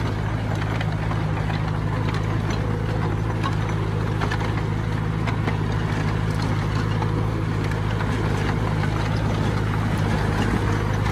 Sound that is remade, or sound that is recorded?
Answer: recorded